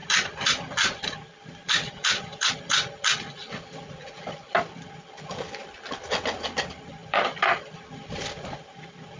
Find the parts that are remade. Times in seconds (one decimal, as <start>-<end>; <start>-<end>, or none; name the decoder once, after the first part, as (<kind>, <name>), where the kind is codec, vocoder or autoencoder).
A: 0.0-2.5 (vocoder, BigVGAN v2); 7.0-9.2